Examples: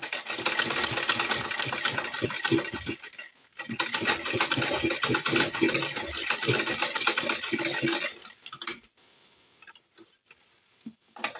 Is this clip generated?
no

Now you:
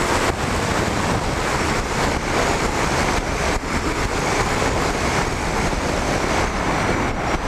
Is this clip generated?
yes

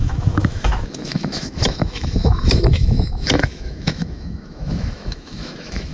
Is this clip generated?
yes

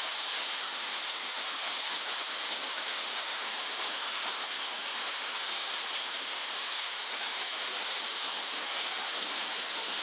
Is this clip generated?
yes